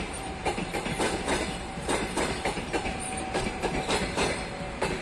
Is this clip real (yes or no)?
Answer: no